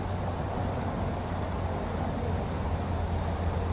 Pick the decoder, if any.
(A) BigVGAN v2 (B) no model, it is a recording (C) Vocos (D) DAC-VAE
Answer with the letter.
B